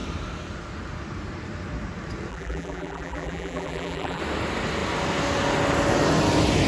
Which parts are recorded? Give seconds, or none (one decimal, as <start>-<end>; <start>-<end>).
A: 0.0-2.3; 4.2-6.7